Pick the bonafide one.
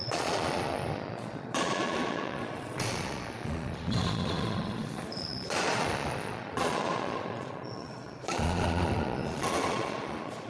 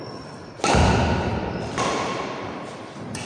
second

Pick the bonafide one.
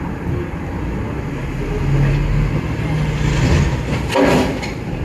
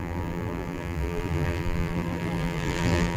first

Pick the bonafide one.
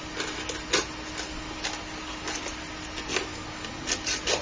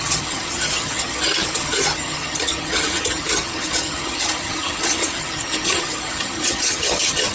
first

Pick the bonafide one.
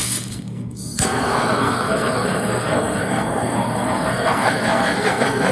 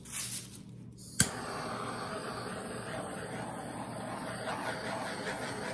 second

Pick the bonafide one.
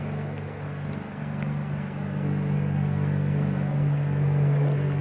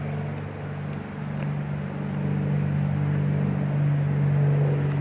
second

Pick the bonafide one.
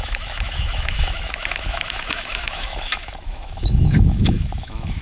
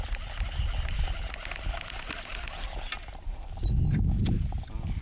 second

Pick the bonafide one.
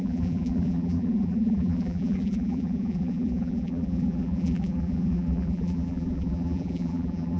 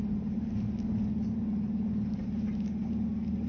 second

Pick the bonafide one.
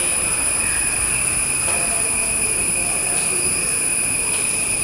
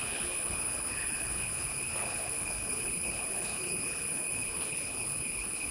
first